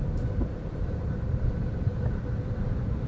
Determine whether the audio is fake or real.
real